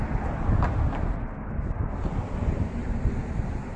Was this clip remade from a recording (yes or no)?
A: no